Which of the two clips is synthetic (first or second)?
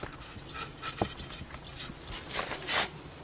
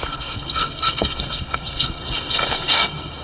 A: second